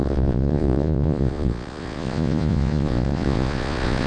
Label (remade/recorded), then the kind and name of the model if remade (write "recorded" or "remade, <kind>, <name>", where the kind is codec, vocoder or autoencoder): remade, vocoder, Vocos